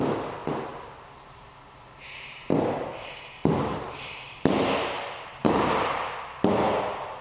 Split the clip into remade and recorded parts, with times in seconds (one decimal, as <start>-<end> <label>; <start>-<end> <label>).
0.0-3.5 recorded; 3.5-4.6 remade; 4.6-5.4 recorded; 5.4-6.1 remade; 6.1-7.2 recorded